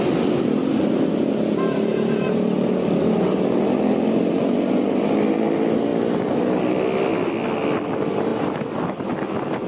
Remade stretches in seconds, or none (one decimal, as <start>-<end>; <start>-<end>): none